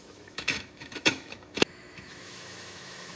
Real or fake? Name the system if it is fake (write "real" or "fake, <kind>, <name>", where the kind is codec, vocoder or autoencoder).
fake, autoencoder, DAC-VAE